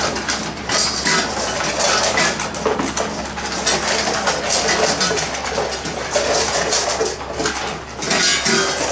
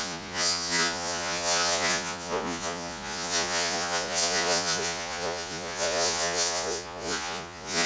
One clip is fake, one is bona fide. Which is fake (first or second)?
second